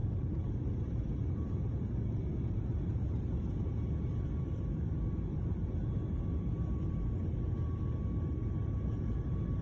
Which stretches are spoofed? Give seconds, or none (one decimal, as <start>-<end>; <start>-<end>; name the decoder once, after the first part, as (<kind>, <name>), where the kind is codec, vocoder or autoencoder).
0.0-9.6 (vocoder, BigVGAN v2)